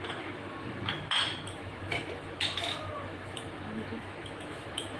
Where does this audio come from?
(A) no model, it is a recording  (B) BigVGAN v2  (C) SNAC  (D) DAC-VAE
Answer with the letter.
D